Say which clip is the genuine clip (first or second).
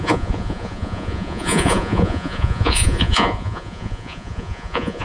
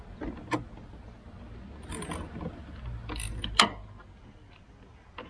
second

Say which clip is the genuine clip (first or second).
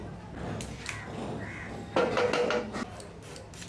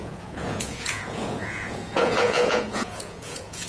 first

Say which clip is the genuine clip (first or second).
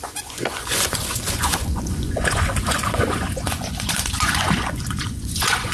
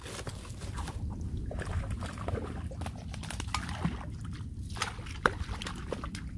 second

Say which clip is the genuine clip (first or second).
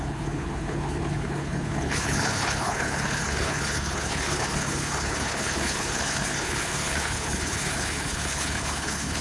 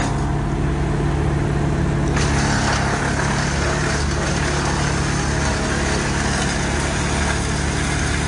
second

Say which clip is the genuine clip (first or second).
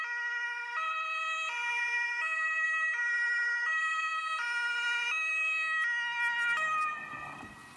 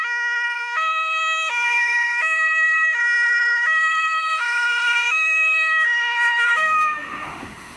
first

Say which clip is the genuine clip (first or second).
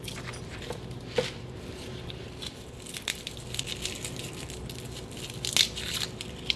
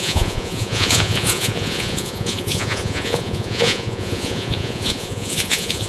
first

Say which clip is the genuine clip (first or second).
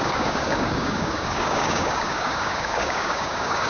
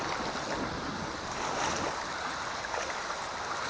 second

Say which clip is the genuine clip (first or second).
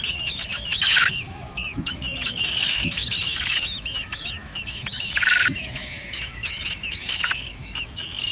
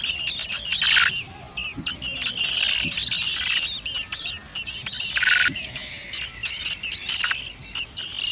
second